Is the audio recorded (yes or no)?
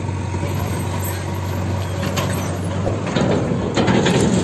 yes